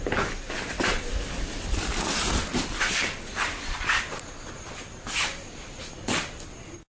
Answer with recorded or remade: remade